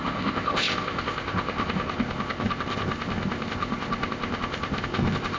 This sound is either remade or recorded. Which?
remade